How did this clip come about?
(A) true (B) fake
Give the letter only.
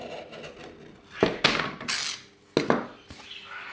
A